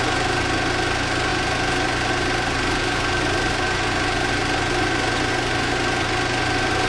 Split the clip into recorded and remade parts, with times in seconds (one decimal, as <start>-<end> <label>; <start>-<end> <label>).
0.0-6.9 recorded